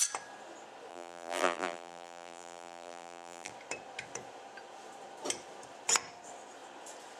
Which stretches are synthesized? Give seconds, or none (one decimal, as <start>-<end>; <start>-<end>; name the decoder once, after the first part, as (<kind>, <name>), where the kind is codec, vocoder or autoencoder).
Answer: 0.9-3.5 (vocoder, BigVGAN v2)